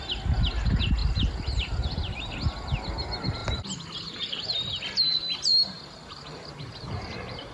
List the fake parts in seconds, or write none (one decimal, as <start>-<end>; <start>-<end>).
1.0-2.3; 5.5-7.5